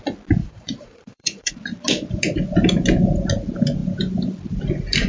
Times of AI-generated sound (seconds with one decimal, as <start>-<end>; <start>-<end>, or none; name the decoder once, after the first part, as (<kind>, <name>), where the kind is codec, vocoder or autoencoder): 0.4-1.5 (vocoder, Vocos)